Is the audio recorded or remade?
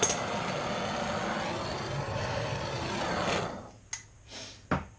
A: recorded